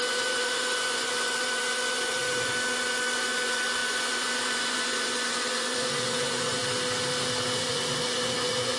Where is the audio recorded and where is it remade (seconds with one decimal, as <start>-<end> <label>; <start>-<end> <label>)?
0.0-6.6 remade; 6.6-7.6 recorded; 7.6-8.8 remade